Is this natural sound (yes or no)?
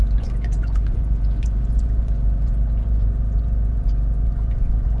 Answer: no